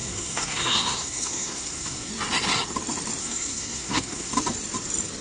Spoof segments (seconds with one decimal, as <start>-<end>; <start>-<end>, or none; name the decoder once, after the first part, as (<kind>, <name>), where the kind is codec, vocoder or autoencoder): 0.0-2.1 (codec, SNAC); 3.2-4.3